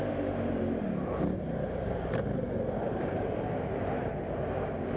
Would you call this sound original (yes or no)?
no